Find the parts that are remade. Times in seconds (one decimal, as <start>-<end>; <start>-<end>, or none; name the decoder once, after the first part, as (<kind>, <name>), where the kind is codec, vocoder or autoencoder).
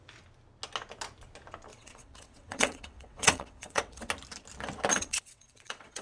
1.7-4.1 (vocoder, WaveNeXt); 4.9-6.0